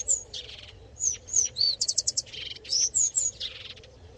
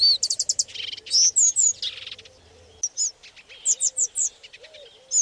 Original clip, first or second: second